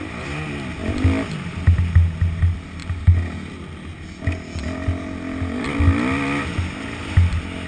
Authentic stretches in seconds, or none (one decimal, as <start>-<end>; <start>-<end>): 0.0-0.8; 1.9-7.7

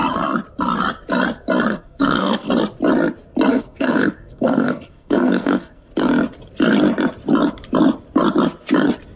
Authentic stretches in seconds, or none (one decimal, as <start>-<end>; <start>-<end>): 0.0-1.7; 2.5-3.5; 5.9-9.2

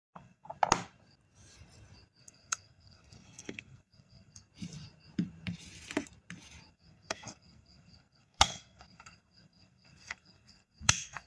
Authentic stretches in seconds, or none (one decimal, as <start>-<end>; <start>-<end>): 0.5-2.2; 4.5-6.7

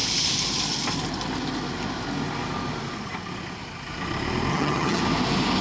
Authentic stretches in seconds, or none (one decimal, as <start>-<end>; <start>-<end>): 0.0-4.5; 5.0-5.6

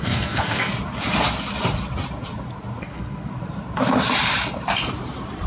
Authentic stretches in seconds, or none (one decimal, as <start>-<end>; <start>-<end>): 0.7-2.8; 3.3-5.5